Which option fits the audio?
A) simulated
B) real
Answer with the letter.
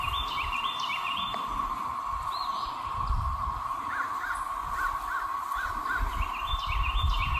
A